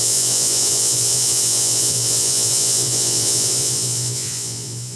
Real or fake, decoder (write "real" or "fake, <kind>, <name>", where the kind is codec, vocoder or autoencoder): fake, vocoder, Vocos